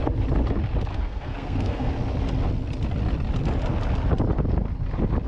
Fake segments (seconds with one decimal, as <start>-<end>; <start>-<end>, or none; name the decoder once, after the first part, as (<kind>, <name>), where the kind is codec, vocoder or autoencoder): 0.9-1.9 (codec, SNAC)